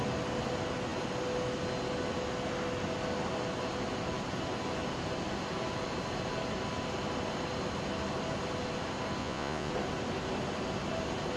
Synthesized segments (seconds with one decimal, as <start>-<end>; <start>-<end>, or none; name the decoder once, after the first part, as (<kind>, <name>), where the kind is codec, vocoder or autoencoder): 9.2-9.7 (vocoder, Vocos)